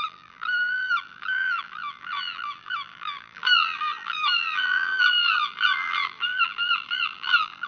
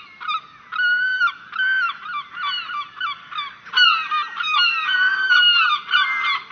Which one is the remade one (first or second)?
first